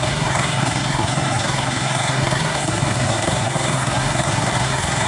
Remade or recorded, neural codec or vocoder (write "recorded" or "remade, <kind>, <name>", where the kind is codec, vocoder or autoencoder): remade, codec, SNAC